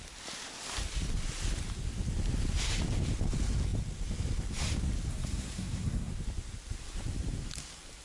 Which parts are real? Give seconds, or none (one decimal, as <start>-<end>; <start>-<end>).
0.0-5.1; 6.1-8.0